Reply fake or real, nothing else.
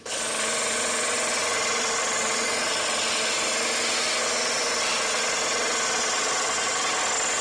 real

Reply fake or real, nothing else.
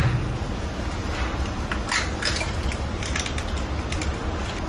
real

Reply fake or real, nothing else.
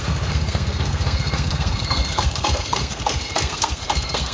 fake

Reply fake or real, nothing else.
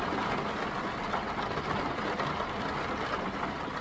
real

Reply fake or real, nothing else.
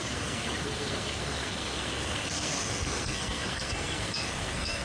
fake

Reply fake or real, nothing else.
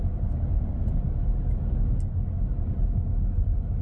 real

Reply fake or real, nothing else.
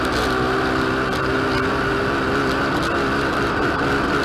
real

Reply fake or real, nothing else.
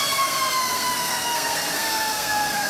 fake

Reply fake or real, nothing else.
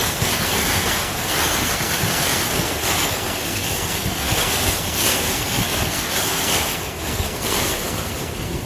fake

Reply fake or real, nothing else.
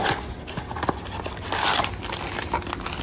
real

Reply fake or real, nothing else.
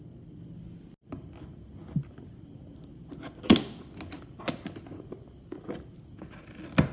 real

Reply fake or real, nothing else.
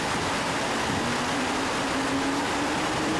real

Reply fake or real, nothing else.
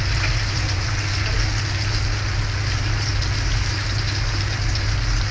real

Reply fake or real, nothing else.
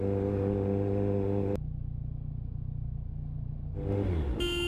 real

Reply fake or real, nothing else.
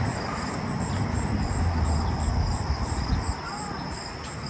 real